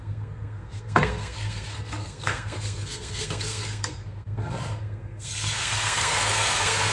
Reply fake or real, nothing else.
fake